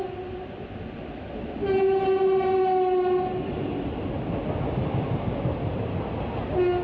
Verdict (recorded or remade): recorded